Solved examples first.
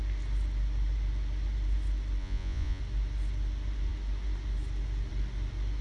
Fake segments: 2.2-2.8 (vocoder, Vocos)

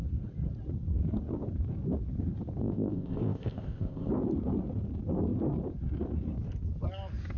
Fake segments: 2.6-4.1 (codec, ZipCodec)

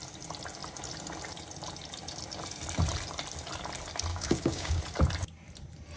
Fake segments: 4.1-4.8 (codec, DAC)

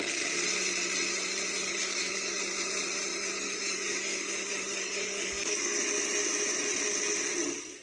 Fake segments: 1.6-2.4 (codec, DAC); 3.1-5.8

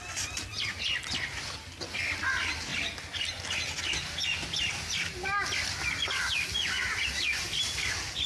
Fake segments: none